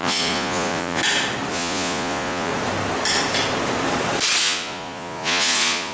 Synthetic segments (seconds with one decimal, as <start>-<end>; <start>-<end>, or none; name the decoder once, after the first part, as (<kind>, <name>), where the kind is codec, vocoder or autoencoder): 0.0-1.0 (vocoder, Vocos); 1.5-2.5; 4.4-5.9